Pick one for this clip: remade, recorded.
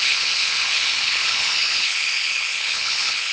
remade